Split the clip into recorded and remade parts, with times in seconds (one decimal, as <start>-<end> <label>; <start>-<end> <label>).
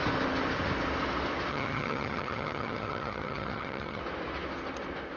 0.0-1.5 recorded; 1.5-4.0 remade; 4.0-5.2 recorded